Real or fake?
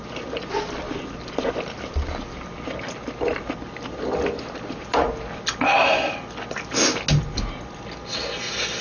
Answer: real